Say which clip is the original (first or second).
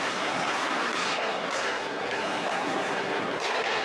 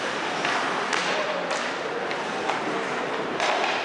second